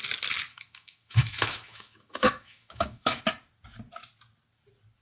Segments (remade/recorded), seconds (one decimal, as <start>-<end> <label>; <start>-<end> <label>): 0.0-0.5 recorded; 0.5-3.2 remade; 3.2-5.0 recorded